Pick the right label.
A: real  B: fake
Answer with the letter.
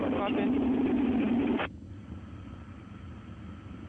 A